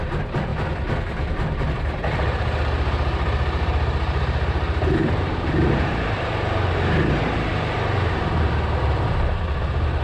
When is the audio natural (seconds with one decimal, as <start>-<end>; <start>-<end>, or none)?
0.5-1.3